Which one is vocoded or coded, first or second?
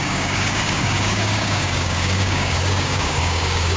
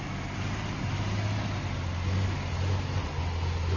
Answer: first